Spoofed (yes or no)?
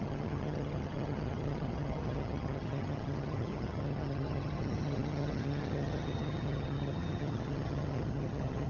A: yes